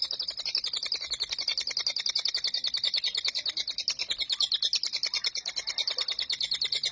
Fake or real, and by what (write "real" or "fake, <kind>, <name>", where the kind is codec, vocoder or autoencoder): real